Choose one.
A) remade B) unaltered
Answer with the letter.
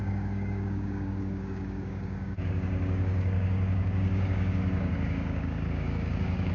A